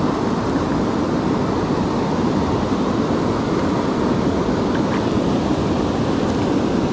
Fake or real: real